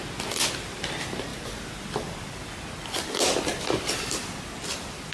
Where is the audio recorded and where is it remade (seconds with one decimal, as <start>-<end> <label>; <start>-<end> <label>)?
0.0-5.1 recorded